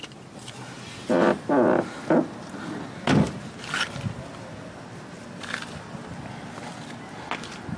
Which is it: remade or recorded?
recorded